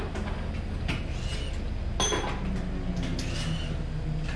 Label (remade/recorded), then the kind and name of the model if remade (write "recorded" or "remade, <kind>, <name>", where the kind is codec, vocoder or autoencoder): recorded